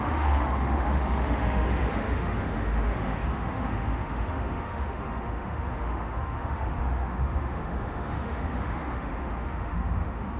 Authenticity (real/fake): fake